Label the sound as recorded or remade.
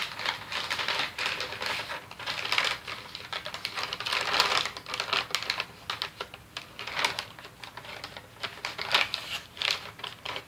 recorded